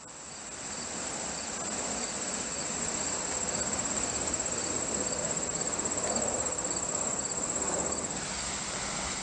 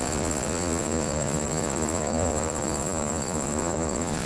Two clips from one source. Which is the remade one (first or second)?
second